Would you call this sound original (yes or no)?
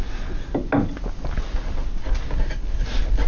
yes